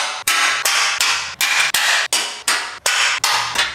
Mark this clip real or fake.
real